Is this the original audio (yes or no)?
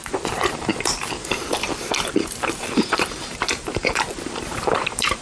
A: no